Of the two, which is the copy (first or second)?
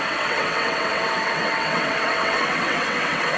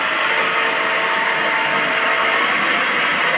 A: first